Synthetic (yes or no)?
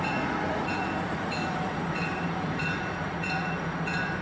yes